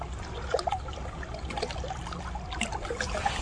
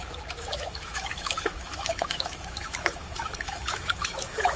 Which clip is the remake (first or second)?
second